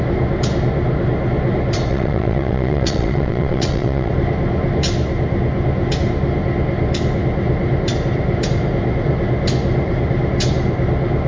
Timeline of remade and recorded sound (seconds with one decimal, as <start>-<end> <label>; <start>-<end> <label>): 0.0-1.9 recorded; 1.9-4.1 remade; 4.1-11.3 recorded